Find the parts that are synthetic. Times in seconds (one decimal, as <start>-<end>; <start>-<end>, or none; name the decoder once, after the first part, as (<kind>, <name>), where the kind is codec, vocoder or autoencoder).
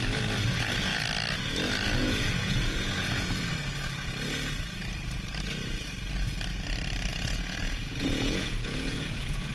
2.0-3.4 (vocoder, Vocos); 7.1-9.5